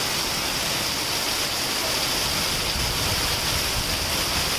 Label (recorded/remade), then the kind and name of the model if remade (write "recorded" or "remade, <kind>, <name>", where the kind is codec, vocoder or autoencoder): recorded